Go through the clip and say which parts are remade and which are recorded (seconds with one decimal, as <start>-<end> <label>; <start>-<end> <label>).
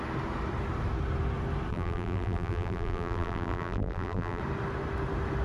0.0-1.7 recorded; 1.7-4.4 remade; 4.4-5.4 recorded